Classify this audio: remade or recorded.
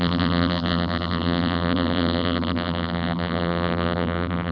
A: remade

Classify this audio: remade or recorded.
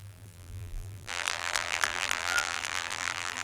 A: remade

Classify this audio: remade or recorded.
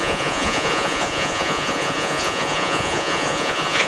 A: remade